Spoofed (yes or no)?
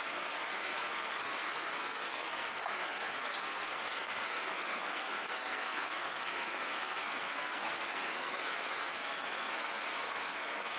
yes